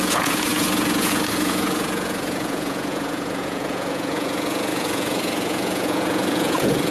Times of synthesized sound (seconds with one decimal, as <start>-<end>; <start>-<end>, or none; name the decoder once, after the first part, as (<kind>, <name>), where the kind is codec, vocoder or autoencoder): 0.0-6.9 (vocoder, Vocos)